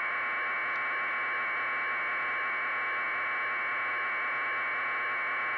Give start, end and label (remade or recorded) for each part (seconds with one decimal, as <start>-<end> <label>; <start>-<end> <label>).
0.0-5.6 recorded